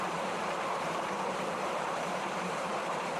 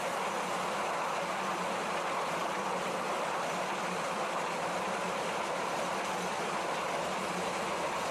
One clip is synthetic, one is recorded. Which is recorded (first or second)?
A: second